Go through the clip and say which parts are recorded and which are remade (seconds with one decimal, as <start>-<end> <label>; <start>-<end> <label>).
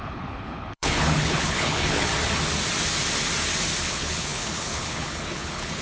0.0-2.1 remade; 2.1-3.8 recorded; 3.8-5.8 remade